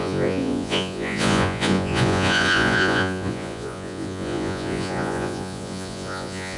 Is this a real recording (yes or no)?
no